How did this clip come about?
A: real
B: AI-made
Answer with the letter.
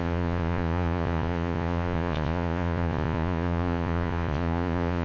B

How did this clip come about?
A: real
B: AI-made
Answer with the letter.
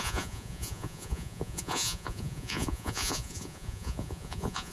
B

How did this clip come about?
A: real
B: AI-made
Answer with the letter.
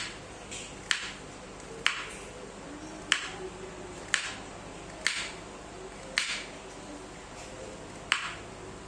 A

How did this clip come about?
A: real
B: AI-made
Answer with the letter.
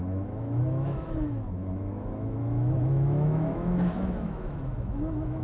B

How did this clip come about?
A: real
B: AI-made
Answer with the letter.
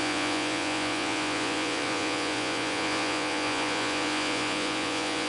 B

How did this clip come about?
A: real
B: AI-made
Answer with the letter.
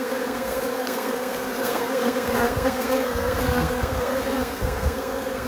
B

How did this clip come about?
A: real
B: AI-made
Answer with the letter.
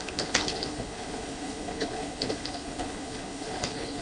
B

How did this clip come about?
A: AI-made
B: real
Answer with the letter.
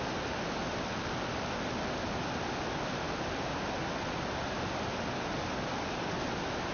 B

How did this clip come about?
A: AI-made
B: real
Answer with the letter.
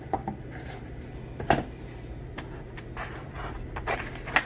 A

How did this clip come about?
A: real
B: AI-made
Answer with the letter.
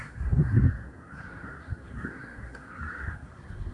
B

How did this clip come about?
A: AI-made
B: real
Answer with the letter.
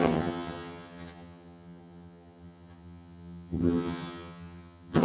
A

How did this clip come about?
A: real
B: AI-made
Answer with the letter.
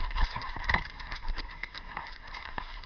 B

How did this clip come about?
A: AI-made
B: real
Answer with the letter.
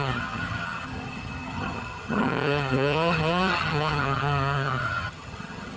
A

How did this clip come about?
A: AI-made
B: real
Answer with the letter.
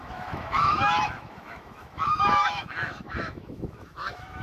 A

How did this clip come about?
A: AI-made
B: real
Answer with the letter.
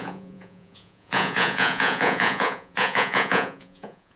A